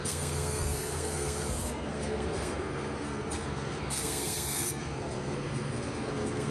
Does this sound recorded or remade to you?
remade